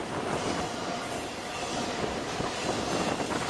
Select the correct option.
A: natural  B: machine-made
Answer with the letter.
A